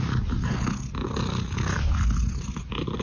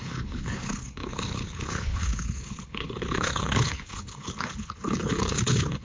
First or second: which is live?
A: first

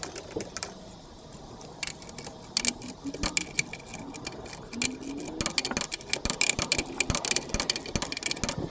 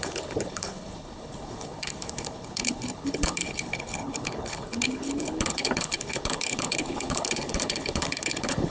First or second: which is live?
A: first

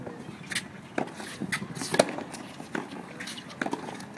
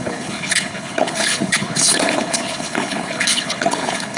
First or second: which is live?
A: first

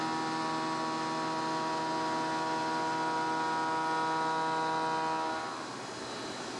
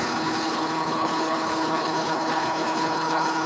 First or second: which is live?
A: first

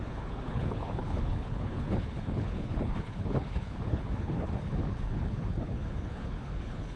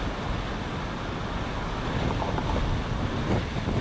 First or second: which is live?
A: second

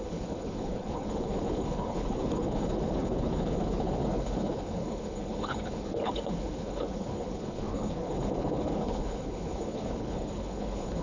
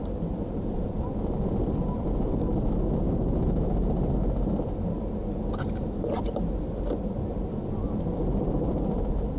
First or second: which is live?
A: second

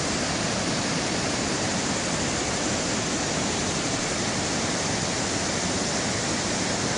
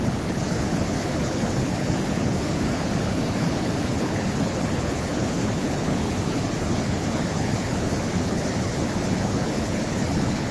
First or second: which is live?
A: first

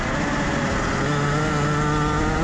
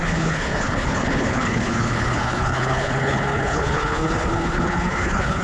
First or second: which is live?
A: first